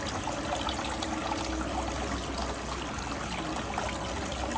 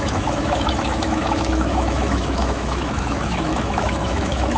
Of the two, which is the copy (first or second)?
second